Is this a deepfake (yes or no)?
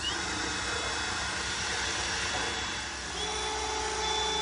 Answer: no